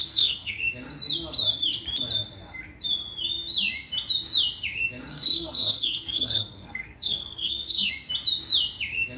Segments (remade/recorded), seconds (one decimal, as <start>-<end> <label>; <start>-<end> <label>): 0.0-0.6 remade; 0.6-5.1 recorded; 5.1-7.9 remade; 7.9-9.2 recorded